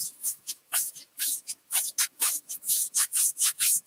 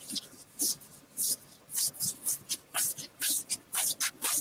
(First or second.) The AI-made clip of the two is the first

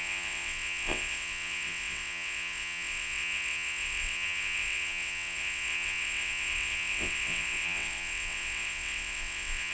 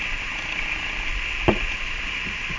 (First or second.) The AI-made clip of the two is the first